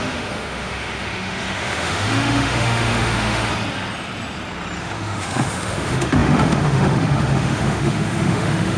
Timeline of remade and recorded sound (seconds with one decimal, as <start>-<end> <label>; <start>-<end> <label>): 0.0-3.5 remade; 3.5-4.8 recorded; 4.8-8.8 remade